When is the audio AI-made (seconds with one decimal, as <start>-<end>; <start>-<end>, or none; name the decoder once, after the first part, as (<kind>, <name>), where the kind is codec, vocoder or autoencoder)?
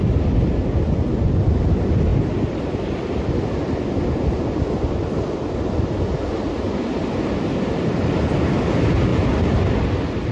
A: none